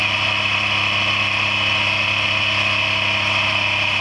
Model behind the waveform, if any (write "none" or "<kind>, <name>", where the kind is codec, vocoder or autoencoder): none